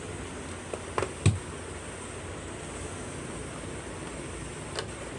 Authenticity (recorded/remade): recorded